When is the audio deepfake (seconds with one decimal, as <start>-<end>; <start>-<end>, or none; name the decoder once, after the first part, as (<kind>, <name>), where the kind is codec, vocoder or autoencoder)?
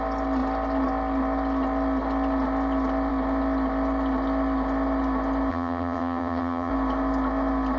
5.5-6.7 (vocoder, HiFi-GAN)